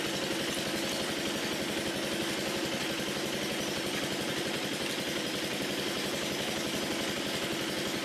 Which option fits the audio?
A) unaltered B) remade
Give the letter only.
A